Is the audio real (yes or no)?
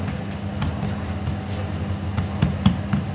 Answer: yes